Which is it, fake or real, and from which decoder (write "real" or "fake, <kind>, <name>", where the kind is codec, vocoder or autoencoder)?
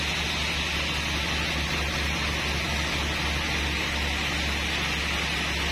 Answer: real